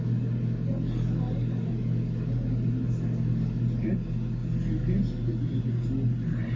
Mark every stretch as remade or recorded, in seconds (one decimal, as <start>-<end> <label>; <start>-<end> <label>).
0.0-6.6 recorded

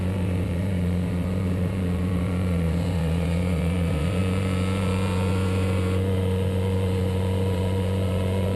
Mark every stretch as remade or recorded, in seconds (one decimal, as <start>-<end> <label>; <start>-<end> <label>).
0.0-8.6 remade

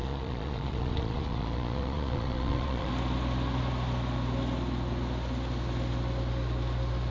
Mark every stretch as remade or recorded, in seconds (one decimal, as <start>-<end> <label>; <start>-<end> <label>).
0.0-2.9 remade; 2.9-7.1 recorded

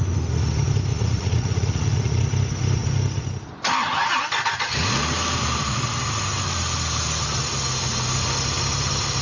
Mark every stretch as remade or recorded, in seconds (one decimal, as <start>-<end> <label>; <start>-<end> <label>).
0.0-0.9 recorded; 0.9-2.2 remade; 2.2-9.2 recorded

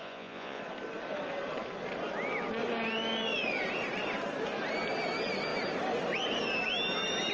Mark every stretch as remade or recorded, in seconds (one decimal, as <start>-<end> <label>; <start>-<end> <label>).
0.0-0.6 remade; 0.6-7.3 recorded

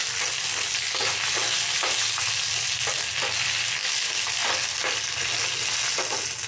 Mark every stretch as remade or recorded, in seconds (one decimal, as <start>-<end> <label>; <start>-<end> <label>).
0.0-6.5 recorded